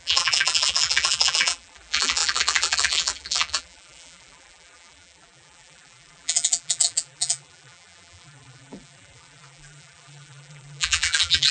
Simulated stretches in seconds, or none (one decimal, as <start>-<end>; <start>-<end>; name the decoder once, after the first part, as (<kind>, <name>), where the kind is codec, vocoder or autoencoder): 0.0-11.5 (vocoder, BigVGAN v2)

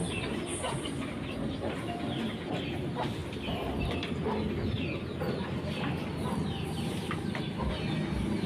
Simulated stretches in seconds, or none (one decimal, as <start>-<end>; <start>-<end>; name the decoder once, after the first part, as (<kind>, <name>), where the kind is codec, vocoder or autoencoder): none

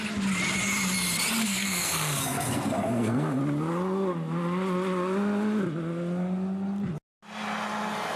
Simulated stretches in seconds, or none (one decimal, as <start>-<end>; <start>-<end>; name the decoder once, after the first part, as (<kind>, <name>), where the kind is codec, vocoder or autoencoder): 1.4-3.4 (codec, SNAC)

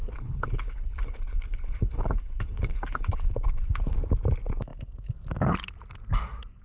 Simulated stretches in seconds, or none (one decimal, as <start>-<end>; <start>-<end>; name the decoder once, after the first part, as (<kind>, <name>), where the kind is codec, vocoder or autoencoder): 0.0-4.0 (codec, HILCodec)